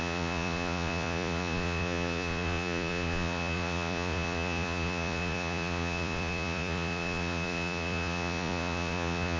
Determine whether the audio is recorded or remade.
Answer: remade